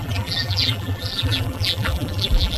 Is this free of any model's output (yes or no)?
no